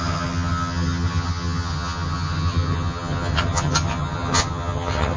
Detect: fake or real fake